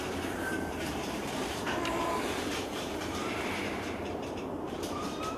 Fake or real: fake